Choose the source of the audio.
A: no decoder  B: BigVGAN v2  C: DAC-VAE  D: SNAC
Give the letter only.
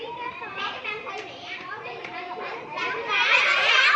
B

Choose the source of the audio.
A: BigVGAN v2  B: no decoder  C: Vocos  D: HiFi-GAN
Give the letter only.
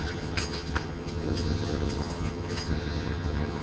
D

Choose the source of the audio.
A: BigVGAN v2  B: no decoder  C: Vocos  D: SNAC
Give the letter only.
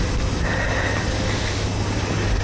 B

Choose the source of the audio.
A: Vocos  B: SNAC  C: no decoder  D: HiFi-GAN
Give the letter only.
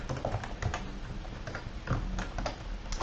C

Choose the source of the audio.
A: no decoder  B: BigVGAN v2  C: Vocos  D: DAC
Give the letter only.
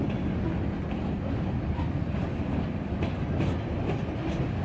A